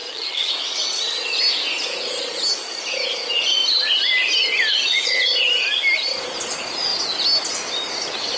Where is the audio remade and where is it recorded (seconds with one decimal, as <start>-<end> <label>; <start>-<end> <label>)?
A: 0.0-0.5 remade; 0.5-8.4 recorded